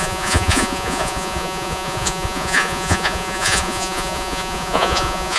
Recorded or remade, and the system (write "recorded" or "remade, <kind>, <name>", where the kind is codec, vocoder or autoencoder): remade, vocoder, Vocos